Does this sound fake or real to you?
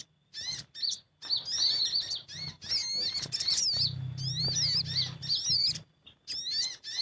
real